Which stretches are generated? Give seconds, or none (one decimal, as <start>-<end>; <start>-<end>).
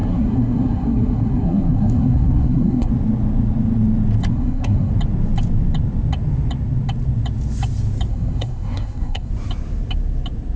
0.0-2.9; 4.3-4.9; 8.1-9.3